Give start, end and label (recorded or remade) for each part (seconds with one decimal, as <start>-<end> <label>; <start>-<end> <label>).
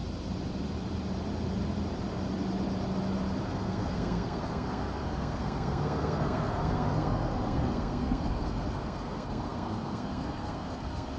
0.0-3.4 recorded; 3.4-11.2 remade